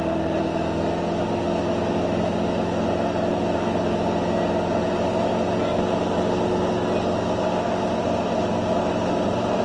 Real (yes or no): yes